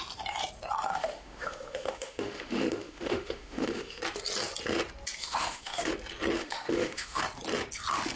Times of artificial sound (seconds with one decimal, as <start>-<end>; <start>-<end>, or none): 0.9-4.0; 5.2-5.9; 6.4-7.2